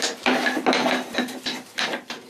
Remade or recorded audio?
remade